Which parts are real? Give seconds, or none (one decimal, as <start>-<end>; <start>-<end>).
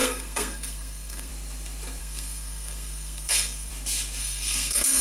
1.3-2.0; 3.7-4.2